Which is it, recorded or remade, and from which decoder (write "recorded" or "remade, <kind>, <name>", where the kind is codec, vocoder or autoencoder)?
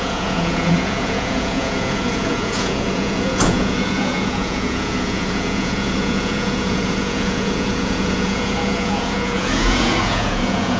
remade, vocoder, Vocos